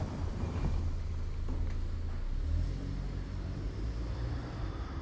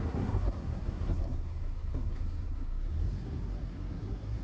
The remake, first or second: second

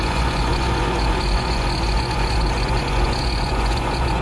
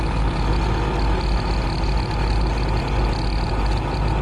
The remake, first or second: first